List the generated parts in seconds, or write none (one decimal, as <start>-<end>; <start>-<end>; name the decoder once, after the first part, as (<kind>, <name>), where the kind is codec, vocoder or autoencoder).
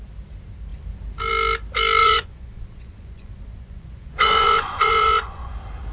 2.0-5.5 (vocoder, Vocos)